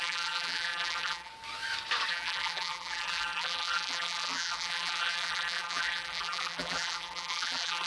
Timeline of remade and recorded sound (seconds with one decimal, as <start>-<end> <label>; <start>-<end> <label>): 0.0-1.3 remade; 1.3-2.1 recorded; 2.1-7.9 remade